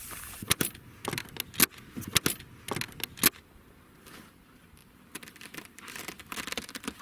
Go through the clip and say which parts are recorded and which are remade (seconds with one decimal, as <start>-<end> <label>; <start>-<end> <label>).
0.0-1.0 remade; 1.0-3.3 recorded; 3.3-7.0 remade